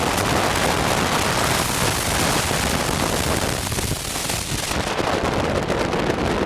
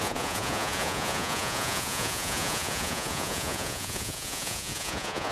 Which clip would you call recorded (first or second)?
first